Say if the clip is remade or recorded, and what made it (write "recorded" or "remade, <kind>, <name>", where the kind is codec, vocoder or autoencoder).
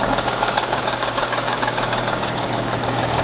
remade, codec, DAC